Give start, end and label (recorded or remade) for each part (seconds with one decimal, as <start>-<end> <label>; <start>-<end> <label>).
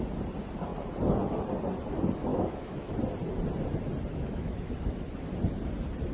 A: 0.0-2.3 recorded; 2.3-2.9 remade; 2.9-4.1 recorded; 4.1-5.3 remade; 5.3-6.1 recorded